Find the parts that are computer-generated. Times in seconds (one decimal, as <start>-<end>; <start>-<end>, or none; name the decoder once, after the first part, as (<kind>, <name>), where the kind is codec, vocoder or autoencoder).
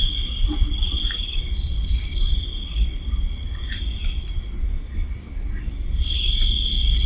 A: 0.0-3.4 (vocoder, BigVGAN v2); 5.0-5.9